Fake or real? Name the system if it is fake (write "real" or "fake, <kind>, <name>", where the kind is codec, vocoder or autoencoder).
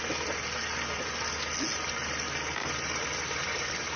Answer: real